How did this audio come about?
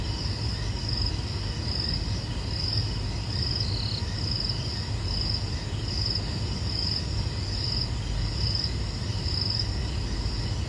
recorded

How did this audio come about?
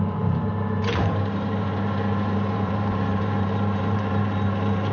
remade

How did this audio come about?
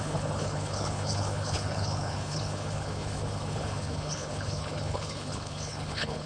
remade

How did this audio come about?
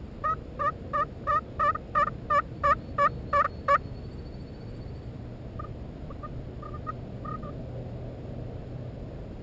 recorded